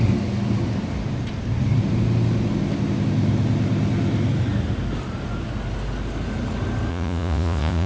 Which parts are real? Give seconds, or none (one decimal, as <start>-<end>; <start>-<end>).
0.0-6.9